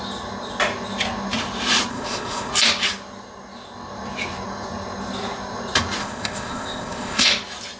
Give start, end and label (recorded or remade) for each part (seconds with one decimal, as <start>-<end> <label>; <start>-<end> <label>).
0.0-1.9 recorded; 1.9-2.5 remade; 2.5-6.0 recorded; 6.0-7.3 remade; 7.3-7.8 recorded